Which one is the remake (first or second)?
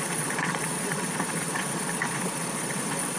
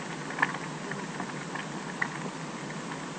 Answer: first